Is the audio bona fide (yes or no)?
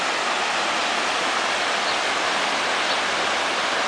yes